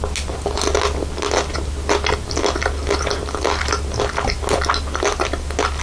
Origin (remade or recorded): recorded